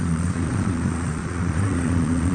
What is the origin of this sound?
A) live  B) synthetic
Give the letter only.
B